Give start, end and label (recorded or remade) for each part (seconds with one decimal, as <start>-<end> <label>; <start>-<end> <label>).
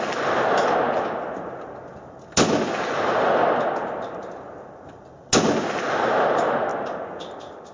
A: 0.0-6.7 recorded; 6.7-7.7 remade